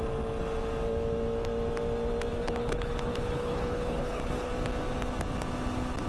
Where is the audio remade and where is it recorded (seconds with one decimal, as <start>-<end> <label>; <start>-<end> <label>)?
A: 0.0-2.3 recorded; 2.3-4.5 remade; 4.5-6.1 recorded